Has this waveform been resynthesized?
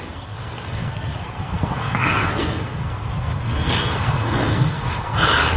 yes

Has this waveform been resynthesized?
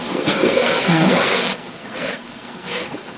yes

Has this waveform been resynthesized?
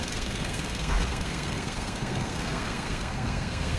yes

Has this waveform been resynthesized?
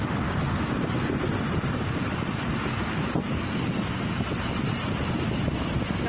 no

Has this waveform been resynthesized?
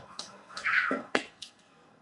yes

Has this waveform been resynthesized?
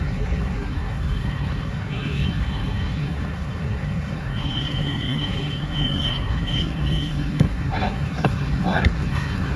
yes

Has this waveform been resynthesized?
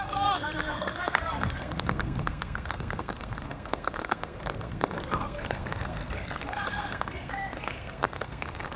yes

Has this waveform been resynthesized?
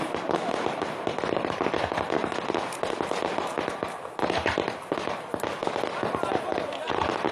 no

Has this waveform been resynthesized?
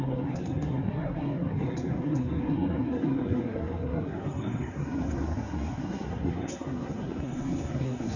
yes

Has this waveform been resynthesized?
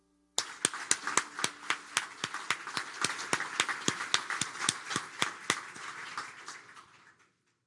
no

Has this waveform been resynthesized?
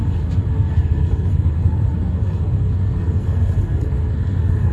yes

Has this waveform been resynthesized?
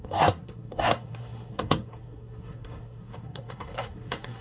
yes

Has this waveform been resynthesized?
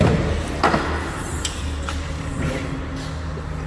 no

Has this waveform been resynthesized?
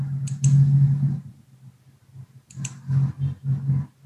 no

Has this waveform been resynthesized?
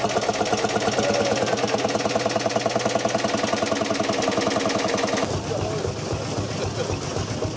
no